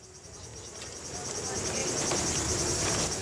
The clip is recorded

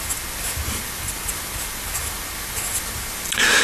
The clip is recorded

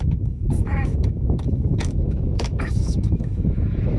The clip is remade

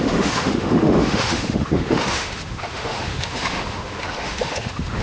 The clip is remade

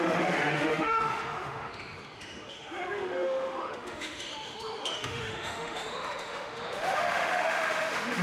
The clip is remade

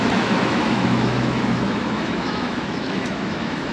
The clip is remade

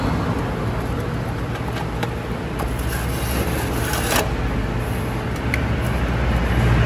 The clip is recorded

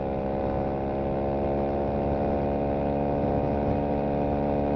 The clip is recorded